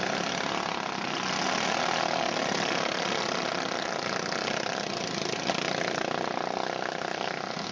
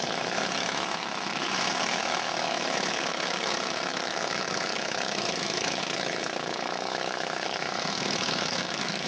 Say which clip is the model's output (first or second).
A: second